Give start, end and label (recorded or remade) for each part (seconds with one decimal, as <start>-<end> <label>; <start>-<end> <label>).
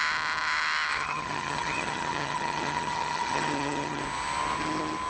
0.0-0.9 recorded; 0.9-4.0 remade; 4.0-5.1 recorded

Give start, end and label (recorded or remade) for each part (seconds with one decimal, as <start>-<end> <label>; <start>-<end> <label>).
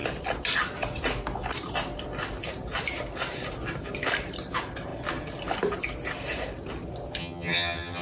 0.0-7.2 recorded; 7.2-8.0 remade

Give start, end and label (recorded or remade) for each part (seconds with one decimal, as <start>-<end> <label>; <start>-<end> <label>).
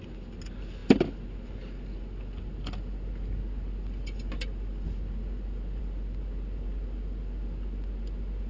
0.0-8.5 recorded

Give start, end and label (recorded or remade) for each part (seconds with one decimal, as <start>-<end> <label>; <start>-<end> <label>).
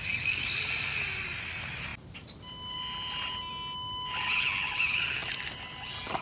0.0-6.2 recorded